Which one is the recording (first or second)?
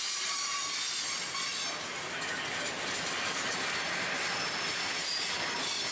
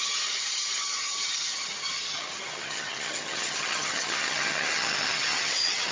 first